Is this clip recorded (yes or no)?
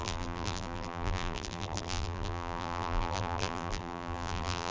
no